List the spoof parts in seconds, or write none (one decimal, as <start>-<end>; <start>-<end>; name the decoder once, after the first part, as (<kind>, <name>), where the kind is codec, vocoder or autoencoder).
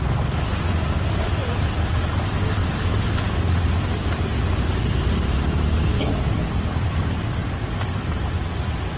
none